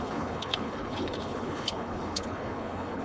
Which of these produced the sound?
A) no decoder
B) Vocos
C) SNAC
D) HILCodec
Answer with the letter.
D